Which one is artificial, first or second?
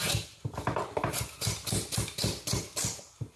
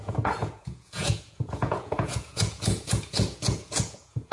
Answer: second